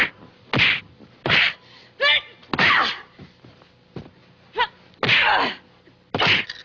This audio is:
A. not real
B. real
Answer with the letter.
B